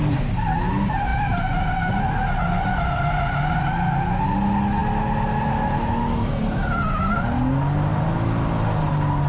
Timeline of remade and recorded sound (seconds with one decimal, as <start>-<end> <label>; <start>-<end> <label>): 0.0-9.3 recorded